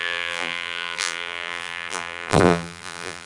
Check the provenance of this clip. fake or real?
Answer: fake